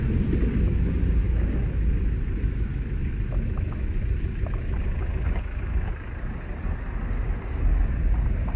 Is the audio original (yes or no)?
yes